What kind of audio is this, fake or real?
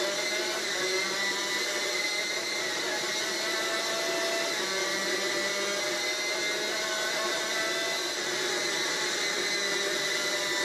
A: real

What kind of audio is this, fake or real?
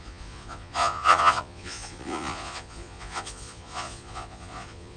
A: fake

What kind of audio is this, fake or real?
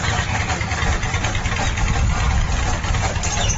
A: real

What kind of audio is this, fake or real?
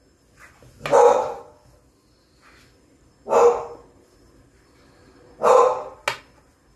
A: real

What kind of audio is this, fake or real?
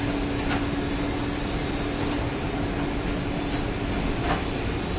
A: real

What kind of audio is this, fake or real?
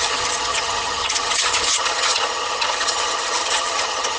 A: fake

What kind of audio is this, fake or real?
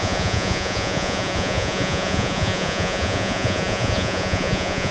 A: fake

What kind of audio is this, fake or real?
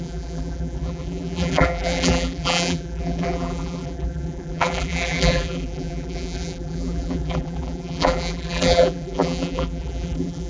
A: fake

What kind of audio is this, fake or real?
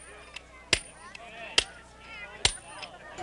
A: real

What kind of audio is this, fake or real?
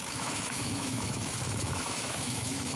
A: fake